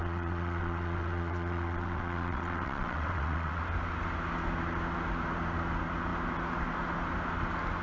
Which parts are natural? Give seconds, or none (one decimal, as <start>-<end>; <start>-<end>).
3.6-7.8